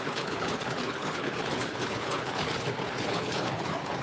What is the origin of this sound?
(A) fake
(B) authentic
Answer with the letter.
A